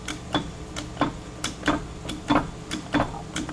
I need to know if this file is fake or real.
real